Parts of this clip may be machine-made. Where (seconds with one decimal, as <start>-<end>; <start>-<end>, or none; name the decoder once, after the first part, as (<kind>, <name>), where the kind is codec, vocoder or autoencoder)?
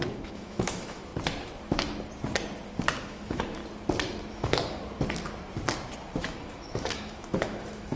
0.0-1.1 (autoencoder, DAC-VAE); 3.0-3.6; 4.3-4.8; 6.2-8.0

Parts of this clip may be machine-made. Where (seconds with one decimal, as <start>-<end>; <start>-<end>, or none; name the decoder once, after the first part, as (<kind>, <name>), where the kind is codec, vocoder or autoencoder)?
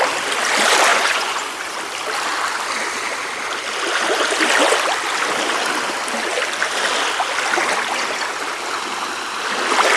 0.9-1.6 (vocoder, Vocos)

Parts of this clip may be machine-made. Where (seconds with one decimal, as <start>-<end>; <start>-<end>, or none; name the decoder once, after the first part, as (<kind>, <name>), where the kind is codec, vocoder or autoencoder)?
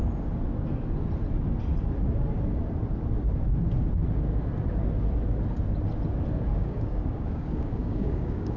6.5-8.6 (codec, DAC)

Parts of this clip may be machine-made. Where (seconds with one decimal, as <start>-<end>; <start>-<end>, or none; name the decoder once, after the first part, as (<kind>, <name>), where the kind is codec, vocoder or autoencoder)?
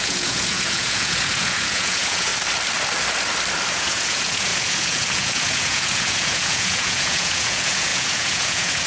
0.0-2.3 (vocoder, Vocos); 3.7-8.9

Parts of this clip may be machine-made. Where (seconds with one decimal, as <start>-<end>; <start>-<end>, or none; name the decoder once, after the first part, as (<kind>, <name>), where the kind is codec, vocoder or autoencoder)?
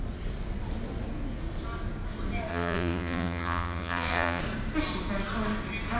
2.5-4.4 (vocoder, Vocos)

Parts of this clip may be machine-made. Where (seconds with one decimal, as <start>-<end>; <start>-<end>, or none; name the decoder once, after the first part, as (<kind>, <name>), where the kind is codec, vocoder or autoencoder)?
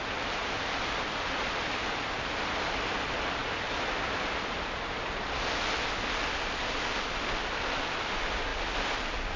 none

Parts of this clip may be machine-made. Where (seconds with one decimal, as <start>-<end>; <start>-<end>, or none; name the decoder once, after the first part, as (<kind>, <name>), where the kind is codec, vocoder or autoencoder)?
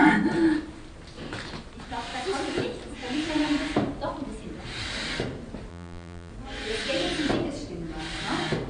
5.7-6.3 (vocoder, BigVGAN v2)